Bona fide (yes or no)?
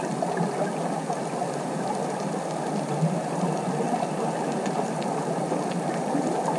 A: yes